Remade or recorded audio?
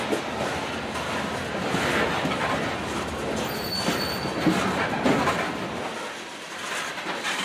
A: recorded